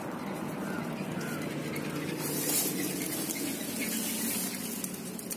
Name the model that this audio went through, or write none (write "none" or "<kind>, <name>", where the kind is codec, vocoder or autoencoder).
none